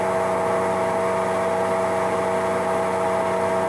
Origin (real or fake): real